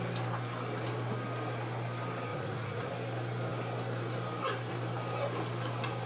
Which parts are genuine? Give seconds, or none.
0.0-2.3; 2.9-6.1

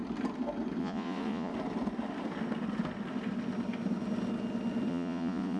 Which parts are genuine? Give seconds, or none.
0.0-0.8; 1.5-4.9